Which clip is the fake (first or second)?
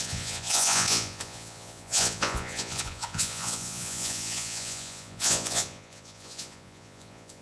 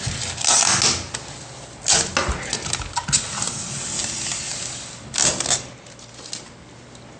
first